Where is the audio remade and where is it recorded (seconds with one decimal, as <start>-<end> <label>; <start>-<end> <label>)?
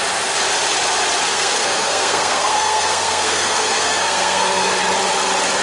0.0-1.3 recorded; 1.3-4.7 remade; 4.7-5.6 recorded